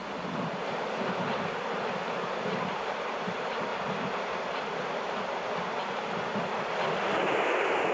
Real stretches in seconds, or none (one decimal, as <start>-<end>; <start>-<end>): 0.0-1.9; 3.7-7.9